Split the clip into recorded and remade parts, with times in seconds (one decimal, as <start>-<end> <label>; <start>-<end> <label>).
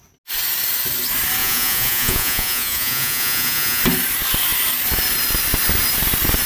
0.0-1.4 recorded; 1.4-3.8 remade; 3.8-6.5 recorded